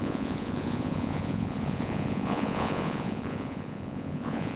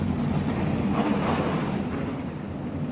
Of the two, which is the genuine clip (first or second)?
second